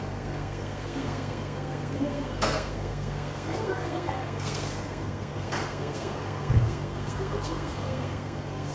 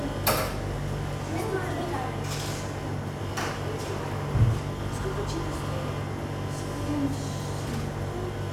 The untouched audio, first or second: second